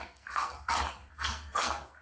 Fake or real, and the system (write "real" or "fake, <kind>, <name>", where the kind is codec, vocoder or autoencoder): fake, codec, SNAC